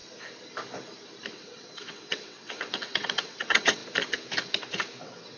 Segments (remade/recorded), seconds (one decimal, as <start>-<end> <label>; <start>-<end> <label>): 0.0-1.3 recorded; 1.3-3.8 remade; 3.8-5.0 recorded; 5.0-5.4 remade